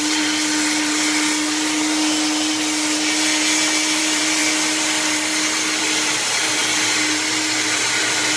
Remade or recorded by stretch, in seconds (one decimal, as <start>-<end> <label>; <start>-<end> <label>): 0.0-4.0 recorded; 4.0-4.4 remade; 4.4-5.8 recorded; 5.8-6.6 remade; 6.6-8.0 recorded; 8.0-8.4 remade